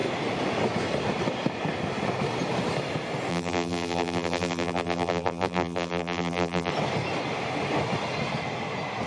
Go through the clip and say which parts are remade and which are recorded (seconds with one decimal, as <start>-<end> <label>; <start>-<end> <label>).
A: 0.0-3.3 recorded; 3.3-6.7 remade; 6.7-9.1 recorded